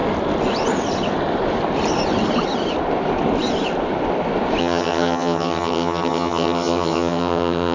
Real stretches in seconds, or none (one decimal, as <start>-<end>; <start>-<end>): 0.0-4.6